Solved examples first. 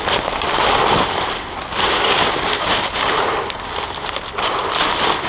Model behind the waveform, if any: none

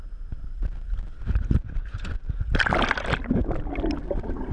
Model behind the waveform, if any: none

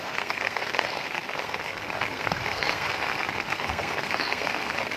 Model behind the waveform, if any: codec, SNAC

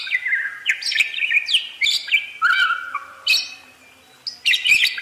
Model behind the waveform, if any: none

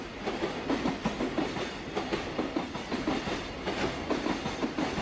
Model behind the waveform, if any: none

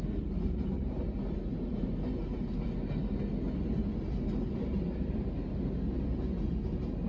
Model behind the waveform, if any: none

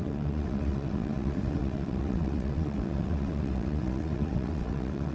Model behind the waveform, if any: vocoder, WaveNeXt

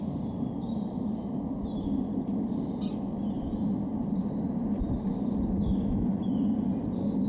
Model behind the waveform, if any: none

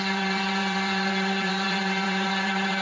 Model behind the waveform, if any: vocoder, BigVGAN v2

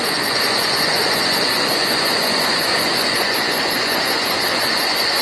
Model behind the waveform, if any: vocoder, Vocos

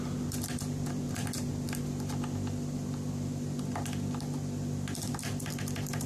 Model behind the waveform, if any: vocoder, BigVGAN v2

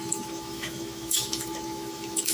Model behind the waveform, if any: autoencoder, DAC-VAE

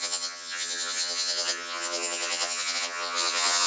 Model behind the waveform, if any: vocoder, HiFi-GAN